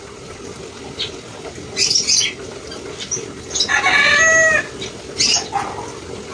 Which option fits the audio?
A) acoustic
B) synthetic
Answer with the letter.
A